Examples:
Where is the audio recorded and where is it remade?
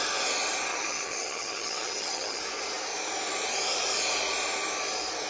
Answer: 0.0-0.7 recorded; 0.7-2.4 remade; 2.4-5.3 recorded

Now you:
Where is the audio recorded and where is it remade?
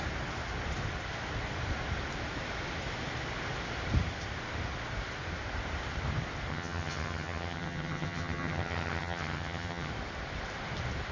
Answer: 0.0-6.5 recorded; 6.5-9.9 remade; 9.9-11.1 recorded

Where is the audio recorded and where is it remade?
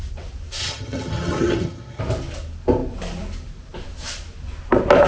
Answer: 0.0-0.6 recorded; 0.6-2.0 remade; 2.0-5.1 recorded